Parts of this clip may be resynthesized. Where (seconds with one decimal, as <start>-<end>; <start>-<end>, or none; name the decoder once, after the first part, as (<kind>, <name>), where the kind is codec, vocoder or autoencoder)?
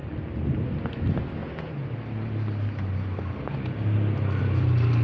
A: none